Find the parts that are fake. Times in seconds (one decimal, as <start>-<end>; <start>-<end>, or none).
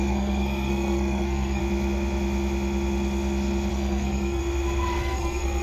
0.0-1.6; 3.7-4.4; 5.0-5.6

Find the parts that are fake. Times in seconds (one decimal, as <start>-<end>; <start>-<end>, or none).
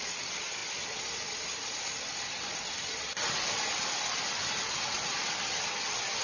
none